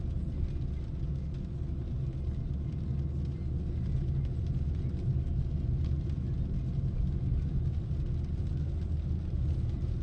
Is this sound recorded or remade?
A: recorded